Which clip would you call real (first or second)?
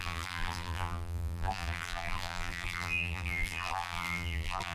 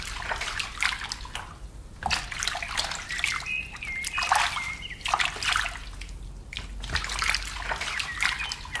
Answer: second